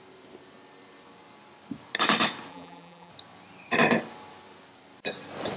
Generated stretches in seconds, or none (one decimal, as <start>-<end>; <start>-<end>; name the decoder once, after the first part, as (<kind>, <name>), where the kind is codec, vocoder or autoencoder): 2.5-3.1 (vocoder, BigVGAN v2)